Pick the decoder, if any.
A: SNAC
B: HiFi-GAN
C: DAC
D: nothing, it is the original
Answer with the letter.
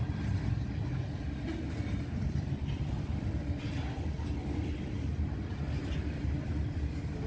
D